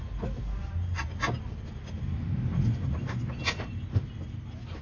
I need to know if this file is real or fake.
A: real